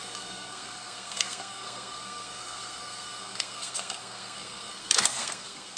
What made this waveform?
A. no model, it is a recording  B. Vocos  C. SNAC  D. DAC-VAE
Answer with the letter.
C